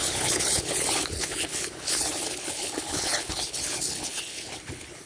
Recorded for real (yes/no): no